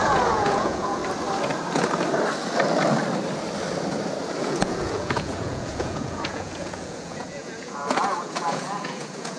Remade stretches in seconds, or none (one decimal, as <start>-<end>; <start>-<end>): 0.0-1.0; 4.4-9.4